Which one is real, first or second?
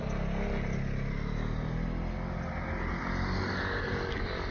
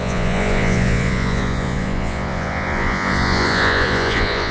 first